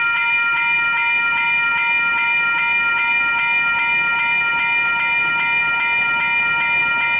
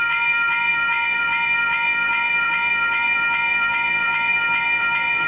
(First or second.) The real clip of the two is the first